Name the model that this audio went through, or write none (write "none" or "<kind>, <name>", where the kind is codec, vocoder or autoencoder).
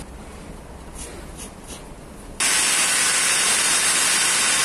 none